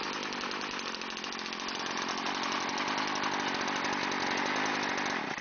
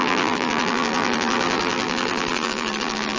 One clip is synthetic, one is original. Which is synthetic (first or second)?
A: second